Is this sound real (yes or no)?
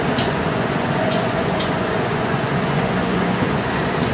no